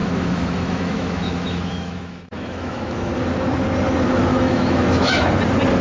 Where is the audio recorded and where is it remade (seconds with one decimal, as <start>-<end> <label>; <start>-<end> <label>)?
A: 0.0-3.1 remade; 3.1-4.3 recorded; 4.3-5.3 remade; 5.3-5.8 recorded